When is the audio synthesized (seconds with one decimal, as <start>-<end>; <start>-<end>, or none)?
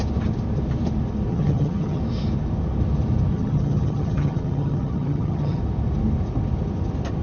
1.3-2.0; 3.3-5.6